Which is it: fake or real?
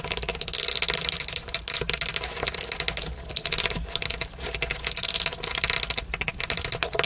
real